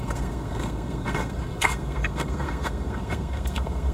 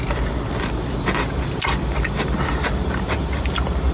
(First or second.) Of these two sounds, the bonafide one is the second